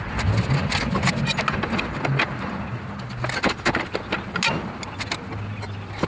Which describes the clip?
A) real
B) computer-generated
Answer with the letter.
A